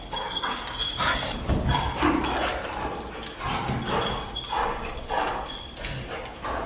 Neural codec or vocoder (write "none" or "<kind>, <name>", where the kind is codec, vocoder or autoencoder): none